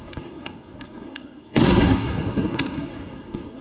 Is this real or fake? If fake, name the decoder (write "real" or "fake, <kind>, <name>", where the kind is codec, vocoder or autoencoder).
fake, codec, SNAC